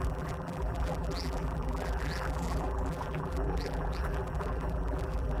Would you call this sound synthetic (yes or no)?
yes